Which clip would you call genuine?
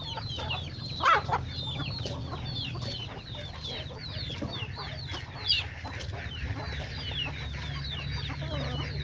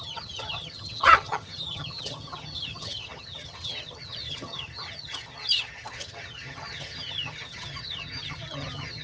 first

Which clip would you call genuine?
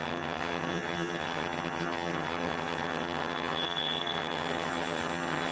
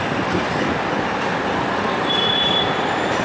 second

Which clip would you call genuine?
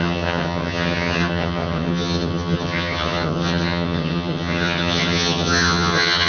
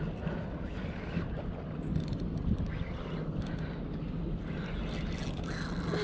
second